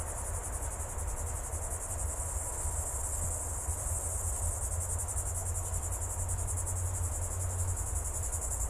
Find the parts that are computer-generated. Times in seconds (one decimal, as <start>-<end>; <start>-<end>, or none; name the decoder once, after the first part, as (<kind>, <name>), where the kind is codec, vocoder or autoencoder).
none